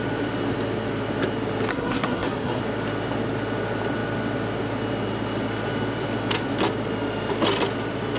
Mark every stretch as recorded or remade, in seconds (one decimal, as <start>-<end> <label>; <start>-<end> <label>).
0.0-1.7 recorded; 1.7-2.6 remade; 2.6-8.2 recorded